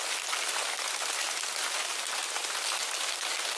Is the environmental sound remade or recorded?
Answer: recorded